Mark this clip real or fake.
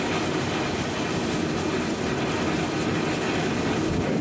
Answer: real